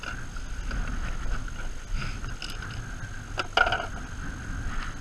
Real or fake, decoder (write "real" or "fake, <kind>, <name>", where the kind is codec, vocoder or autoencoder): real